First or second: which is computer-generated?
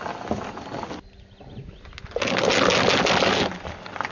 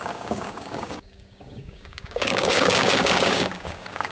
second